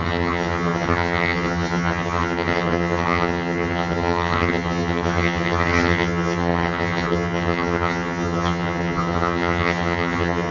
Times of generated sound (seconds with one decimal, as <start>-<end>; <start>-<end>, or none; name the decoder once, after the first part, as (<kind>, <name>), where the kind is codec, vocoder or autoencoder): 0.0-10.5 (vocoder, HiFi-GAN)